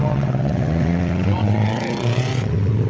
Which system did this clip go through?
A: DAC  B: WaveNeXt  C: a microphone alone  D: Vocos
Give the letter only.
B